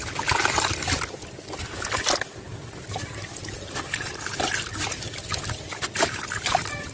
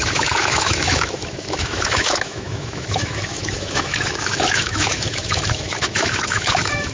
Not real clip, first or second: second